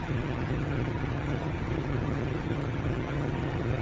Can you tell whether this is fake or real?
fake